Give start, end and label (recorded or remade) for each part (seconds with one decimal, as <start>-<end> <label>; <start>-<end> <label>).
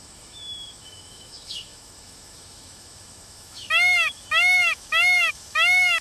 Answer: 0.0-6.0 remade